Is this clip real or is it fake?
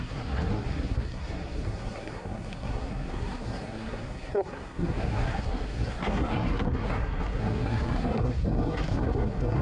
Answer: fake